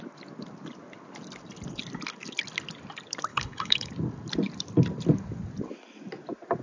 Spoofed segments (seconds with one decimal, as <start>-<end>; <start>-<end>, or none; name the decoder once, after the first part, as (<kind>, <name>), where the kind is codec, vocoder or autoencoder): 3.3-3.9 (codec, HILCodec)